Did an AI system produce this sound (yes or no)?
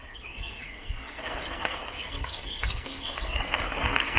yes